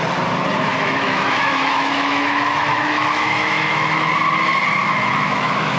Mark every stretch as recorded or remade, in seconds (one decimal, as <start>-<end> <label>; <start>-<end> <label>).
0.0-0.7 recorded; 0.7-4.1 remade; 4.1-4.8 recorded; 4.8-5.8 remade